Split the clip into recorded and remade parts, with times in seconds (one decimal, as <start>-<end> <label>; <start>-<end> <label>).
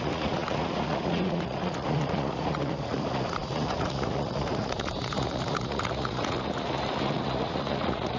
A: 0.0-8.2 remade